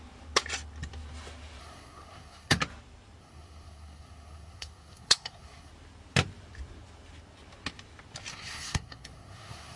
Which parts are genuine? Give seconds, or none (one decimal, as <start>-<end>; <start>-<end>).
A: 0.0-1.6; 2.6-3.2; 5.7-8.3